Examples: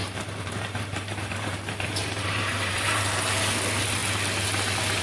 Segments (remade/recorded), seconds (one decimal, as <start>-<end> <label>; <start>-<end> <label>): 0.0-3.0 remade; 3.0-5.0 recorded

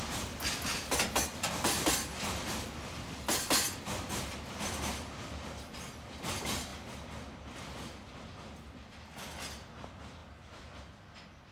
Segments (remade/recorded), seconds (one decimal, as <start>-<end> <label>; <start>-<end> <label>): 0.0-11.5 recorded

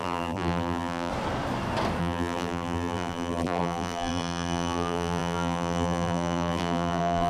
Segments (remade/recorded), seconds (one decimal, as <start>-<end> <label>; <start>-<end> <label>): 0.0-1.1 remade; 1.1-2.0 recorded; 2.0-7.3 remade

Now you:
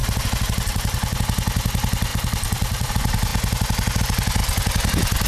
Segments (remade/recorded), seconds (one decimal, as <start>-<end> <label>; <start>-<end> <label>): 0.0-1.2 remade; 1.2-2.1 recorded; 2.1-2.9 remade; 2.9-5.3 recorded

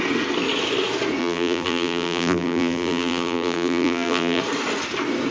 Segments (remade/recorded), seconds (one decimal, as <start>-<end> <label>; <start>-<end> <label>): 0.0-1.2 recorded; 1.2-4.4 remade; 4.4-5.3 recorded